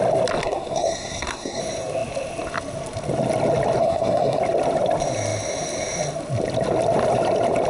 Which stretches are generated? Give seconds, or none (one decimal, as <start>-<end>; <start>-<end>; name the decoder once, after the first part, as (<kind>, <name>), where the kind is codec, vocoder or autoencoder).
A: 0.4-1.6 (codec, SNAC); 3.8-4.4